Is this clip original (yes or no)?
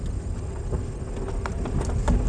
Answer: yes